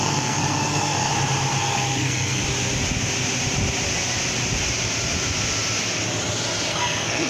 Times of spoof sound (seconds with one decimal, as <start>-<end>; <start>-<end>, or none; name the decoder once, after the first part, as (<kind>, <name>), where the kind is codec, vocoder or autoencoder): 0.0-1.1 (codec, SNAC); 1.6-2.4; 6.7-7.3